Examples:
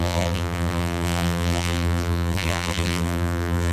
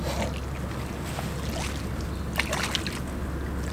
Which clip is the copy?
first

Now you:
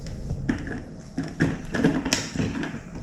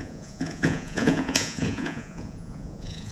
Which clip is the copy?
second